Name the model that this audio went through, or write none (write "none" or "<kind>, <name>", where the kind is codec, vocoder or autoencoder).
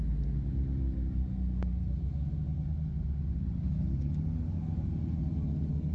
none